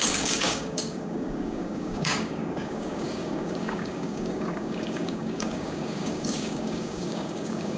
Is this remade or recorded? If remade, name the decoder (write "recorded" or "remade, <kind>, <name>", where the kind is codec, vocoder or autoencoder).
remade, codec, DAC